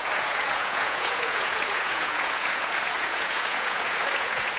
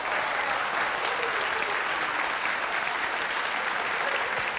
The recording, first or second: second